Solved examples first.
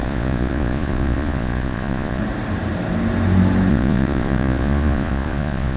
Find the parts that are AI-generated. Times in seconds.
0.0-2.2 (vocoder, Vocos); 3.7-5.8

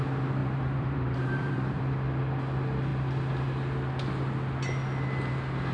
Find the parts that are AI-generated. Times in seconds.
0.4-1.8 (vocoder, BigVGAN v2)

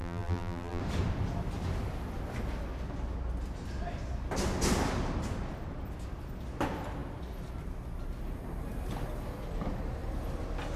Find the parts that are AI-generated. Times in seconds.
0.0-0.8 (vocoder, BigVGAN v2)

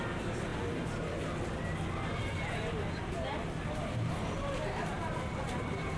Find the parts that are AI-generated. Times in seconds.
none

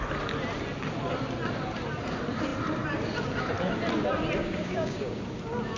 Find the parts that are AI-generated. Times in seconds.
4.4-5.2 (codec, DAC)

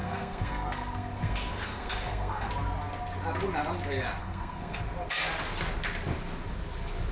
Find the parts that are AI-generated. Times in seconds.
0.0-2.5 (codec, SNAC); 4.2-4.8